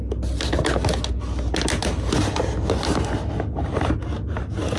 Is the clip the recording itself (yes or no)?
yes